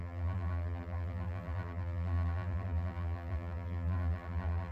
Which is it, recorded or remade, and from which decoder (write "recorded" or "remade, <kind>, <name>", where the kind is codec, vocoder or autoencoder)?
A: remade, vocoder, BigVGAN v2